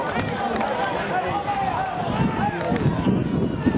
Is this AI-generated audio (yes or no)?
no